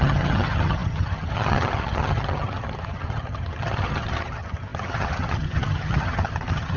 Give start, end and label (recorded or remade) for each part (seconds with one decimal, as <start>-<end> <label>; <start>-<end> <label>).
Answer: 0.0-6.8 remade